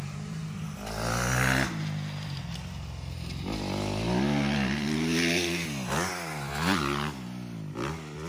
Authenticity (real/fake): real